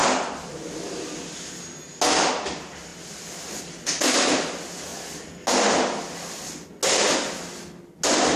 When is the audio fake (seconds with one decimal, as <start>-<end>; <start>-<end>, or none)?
none